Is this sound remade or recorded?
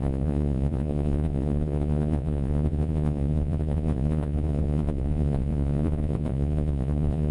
remade